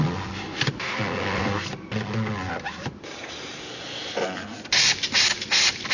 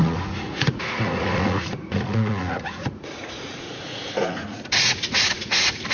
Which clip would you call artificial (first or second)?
second